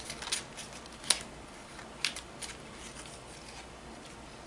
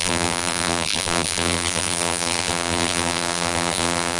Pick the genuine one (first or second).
first